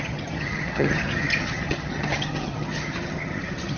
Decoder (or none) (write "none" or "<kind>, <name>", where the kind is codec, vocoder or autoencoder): vocoder, HiFi-GAN